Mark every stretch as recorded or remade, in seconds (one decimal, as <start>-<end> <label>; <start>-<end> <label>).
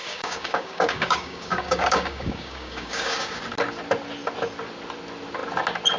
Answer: 0.0-3.4 remade; 3.4-6.0 recorded